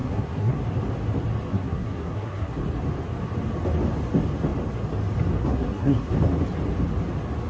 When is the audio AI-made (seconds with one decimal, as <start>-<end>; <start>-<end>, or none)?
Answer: 0.0-0.6; 1.5-2.6; 5.4-6.1